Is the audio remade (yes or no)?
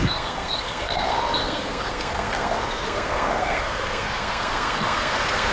yes